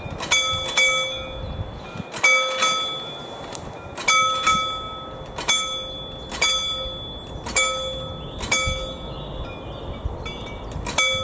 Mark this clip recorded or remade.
recorded